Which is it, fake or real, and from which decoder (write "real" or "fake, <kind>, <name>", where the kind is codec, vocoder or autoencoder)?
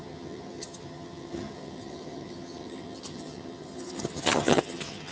fake, vocoder, HiFi-GAN